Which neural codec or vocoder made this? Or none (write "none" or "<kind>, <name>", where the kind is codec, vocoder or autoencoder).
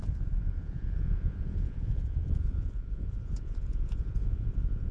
vocoder, Vocos